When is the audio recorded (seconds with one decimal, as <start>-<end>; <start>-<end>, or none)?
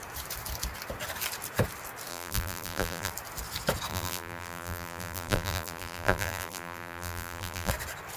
0.0-2.1; 3.1-3.9; 7.7-8.2